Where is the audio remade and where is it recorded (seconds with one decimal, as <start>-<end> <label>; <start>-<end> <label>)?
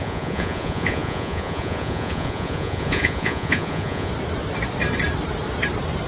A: 0.0-4.1 remade; 4.1-6.1 recorded